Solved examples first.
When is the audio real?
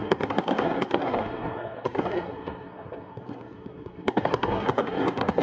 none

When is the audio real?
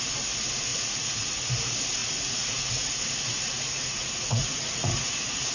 0.0-0.7; 1.5-2.0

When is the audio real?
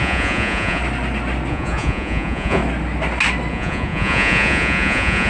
0.8-1.5; 2.6-3.5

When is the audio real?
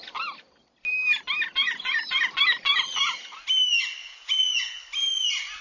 0.0-1.6; 2.3-4.0; 4.8-5.6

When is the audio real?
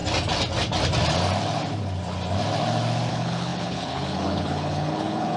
0.0-3.1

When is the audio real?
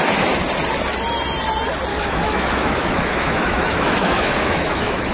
0.0-1.9